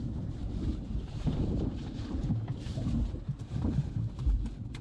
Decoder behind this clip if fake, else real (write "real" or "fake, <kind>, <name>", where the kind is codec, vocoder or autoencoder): fake, vocoder, BigVGAN v2